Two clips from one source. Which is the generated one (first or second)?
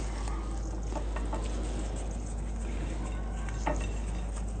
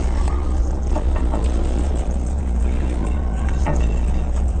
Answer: second